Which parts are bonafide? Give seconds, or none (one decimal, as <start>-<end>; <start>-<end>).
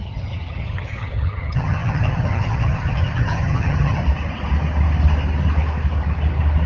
4.0-6.7